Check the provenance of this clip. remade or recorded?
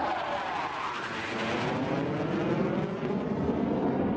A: recorded